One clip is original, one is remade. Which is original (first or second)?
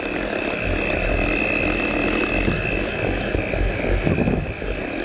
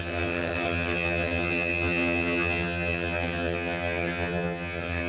first